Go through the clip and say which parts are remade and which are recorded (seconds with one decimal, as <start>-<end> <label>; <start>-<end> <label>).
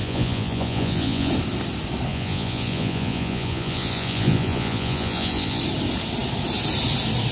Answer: 0.0-1.3 remade; 1.3-2.1 recorded; 2.1-5.6 remade; 5.6-7.3 recorded